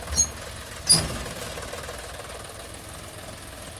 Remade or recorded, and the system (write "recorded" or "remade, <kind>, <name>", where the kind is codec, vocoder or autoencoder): recorded